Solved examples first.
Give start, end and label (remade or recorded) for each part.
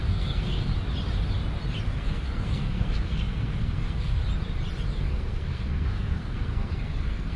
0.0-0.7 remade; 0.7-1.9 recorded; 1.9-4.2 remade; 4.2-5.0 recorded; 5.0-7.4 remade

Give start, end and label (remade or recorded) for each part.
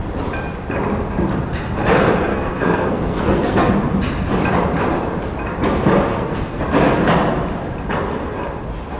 0.0-2.3 recorded; 2.3-3.7 remade; 3.7-6.1 recorded; 6.1-6.6 remade; 6.6-9.0 recorded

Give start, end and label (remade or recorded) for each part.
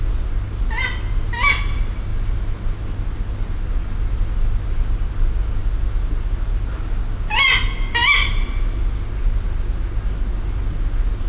0.0-11.3 recorded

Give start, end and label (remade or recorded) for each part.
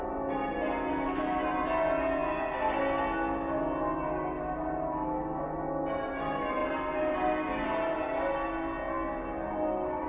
0.0-0.9 recorded; 0.9-1.4 remade; 1.4-10.1 recorded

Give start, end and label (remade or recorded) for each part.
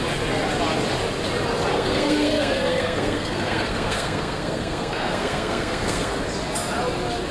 0.0-1.7 recorded; 1.7-6.1 remade; 6.1-7.3 recorded